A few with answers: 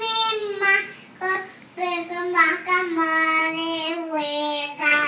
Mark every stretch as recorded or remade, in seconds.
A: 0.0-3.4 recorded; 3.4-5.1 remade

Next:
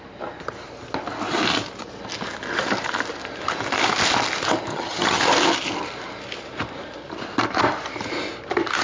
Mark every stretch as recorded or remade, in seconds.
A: 0.0-4.7 recorded; 4.7-5.2 remade; 5.2-8.8 recorded

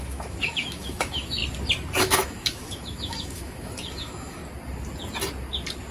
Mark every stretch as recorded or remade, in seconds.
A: 0.0-1.4 remade; 1.4-2.0 recorded; 2.0-4.4 remade; 4.4-5.9 recorded

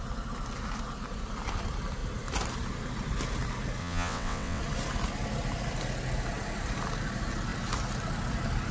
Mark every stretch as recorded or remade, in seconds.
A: 0.0-3.8 recorded; 3.8-4.6 remade; 4.6-8.7 recorded